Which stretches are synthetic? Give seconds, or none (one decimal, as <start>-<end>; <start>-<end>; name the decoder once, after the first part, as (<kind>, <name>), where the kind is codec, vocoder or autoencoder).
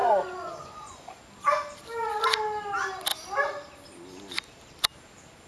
0.0-1.2 (vocoder, Vocos)